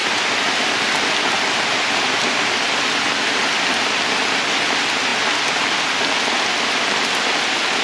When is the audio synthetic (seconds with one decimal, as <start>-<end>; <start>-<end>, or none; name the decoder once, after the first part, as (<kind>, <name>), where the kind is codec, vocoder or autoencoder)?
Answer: none